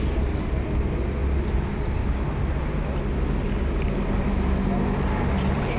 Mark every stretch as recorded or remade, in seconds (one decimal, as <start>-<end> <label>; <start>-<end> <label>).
0.0-5.8 recorded